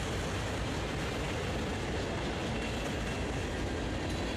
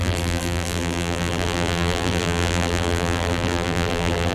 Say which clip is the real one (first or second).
first